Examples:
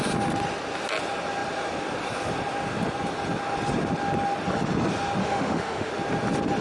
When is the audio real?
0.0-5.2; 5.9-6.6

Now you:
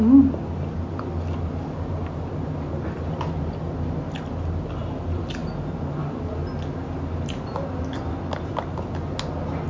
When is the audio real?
0.0-9.7

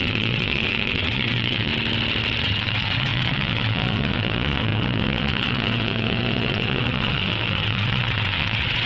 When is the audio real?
1.7-2.4